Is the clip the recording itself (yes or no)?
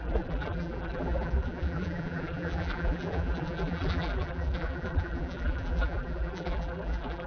no